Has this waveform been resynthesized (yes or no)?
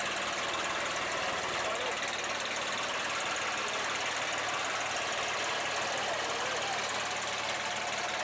no